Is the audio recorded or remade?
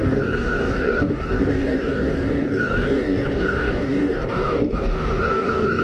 remade